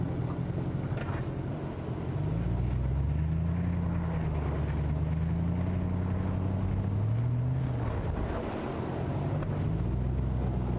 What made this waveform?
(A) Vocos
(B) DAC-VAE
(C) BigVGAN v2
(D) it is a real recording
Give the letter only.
D